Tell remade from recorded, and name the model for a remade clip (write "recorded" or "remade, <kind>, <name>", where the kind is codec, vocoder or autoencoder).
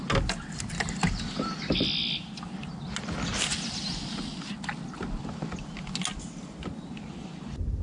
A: recorded